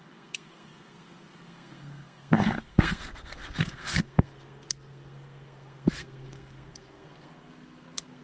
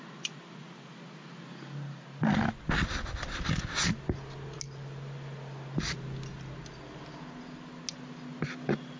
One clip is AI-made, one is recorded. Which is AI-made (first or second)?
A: first